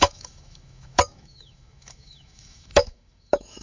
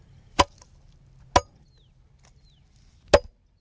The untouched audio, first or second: second